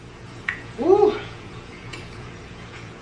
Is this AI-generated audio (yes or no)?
yes